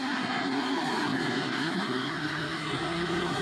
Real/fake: fake